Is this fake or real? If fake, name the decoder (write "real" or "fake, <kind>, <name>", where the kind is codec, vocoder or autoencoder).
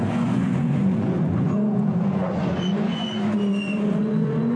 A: fake, vocoder, Vocos